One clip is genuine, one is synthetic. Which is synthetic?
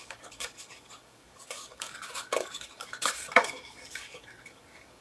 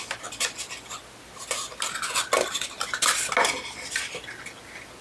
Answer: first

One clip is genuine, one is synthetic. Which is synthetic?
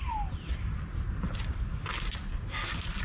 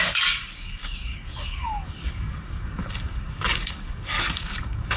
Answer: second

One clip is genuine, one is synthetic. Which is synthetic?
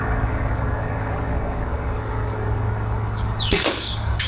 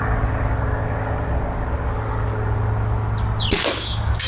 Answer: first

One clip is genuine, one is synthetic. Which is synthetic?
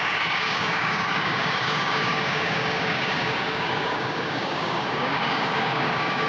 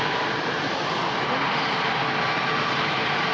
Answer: first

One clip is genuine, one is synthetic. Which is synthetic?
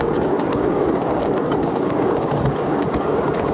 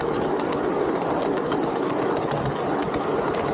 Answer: first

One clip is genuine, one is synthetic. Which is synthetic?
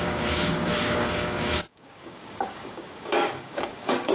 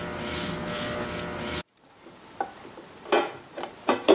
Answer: first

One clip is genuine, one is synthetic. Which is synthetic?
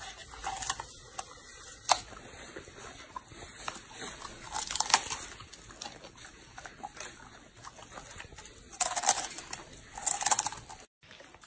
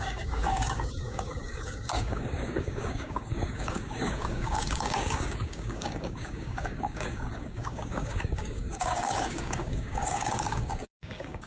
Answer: second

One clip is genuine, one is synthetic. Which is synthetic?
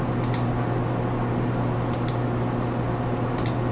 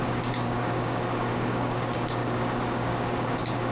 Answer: second